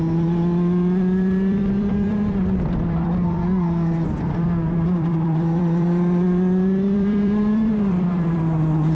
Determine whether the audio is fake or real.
fake